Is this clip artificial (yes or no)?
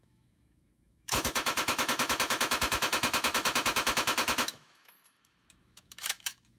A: yes